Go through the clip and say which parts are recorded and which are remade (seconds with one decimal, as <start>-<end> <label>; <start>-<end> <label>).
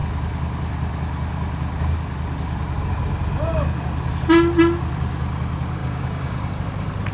0.0-5.8 recorded; 5.8-6.6 remade; 6.6-7.1 recorded